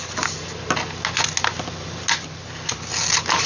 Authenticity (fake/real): real